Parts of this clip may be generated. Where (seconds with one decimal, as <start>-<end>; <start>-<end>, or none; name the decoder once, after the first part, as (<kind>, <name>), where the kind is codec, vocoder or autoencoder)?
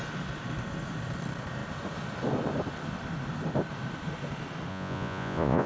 4.7-5.7 (vocoder, Vocos)